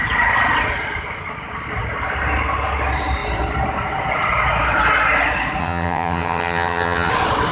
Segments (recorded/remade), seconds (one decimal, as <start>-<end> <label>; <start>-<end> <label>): 0.0-5.6 recorded; 5.6-7.1 remade; 7.1-7.5 recorded